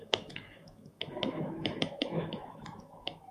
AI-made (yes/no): yes